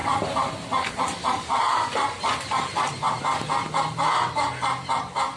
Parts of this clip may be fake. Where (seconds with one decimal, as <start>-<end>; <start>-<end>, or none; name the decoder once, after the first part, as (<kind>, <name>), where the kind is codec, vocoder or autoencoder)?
none